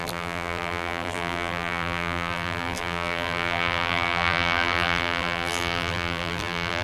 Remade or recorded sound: remade